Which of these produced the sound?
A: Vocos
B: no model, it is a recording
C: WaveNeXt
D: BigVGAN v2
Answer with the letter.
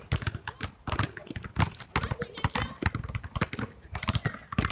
B